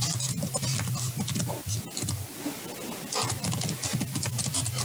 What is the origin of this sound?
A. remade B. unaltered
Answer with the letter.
B